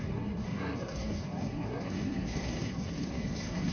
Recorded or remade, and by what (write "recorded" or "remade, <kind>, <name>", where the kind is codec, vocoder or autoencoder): remade, codec, SNAC